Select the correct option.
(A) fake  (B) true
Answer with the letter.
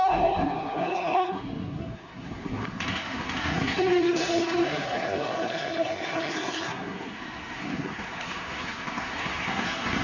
A